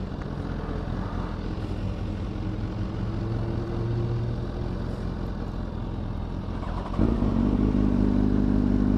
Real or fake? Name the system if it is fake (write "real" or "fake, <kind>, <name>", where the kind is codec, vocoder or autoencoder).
real